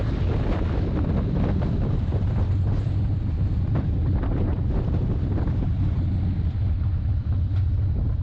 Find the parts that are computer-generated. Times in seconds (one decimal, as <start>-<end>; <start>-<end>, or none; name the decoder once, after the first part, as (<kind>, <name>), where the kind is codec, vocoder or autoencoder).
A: none